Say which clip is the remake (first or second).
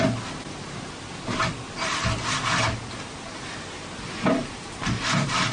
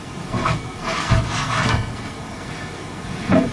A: second